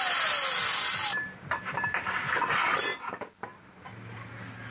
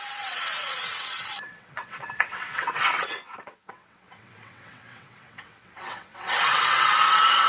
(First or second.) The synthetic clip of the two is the second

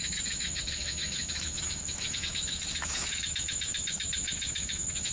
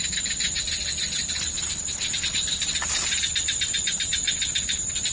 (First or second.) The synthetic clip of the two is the first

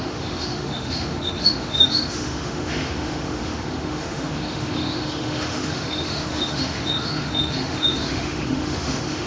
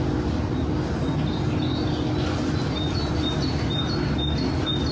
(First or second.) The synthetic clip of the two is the first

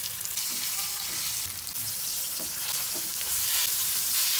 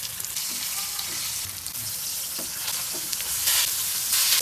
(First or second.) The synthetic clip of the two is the second